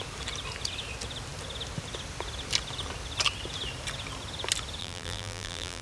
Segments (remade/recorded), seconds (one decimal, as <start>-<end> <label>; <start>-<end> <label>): 0.0-4.8 recorded; 4.8-5.8 remade